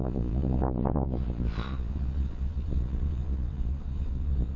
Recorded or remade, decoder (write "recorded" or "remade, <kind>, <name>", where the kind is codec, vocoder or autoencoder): remade, vocoder, Vocos